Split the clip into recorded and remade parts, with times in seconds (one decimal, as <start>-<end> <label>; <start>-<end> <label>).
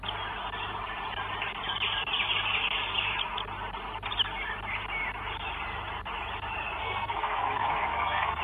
0.0-6.8 recorded; 6.8-8.4 remade